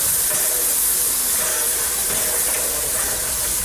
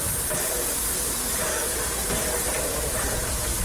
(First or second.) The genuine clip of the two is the first